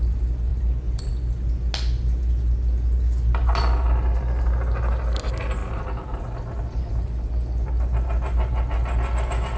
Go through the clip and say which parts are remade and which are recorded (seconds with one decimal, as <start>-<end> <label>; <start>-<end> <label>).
0.0-9.6 recorded